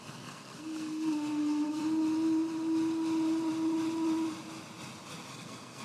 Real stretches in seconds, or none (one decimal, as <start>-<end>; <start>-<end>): 1.8-5.3